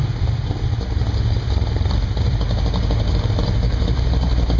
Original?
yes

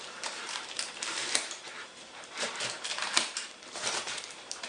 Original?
no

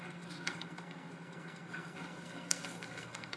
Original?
no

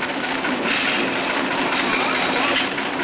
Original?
yes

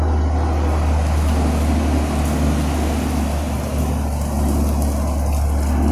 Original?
yes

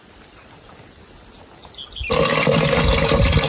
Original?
yes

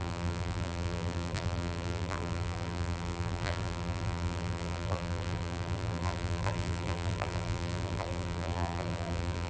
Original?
no